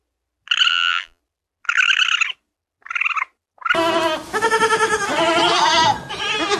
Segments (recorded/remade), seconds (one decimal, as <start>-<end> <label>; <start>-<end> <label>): 0.0-0.7 recorded; 0.7-1.2 remade; 1.2-6.6 recorded